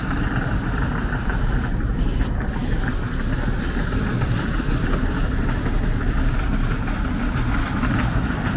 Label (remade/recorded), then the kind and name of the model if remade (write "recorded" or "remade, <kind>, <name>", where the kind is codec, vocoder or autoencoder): recorded